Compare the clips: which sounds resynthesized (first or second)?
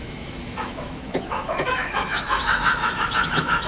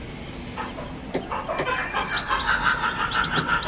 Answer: first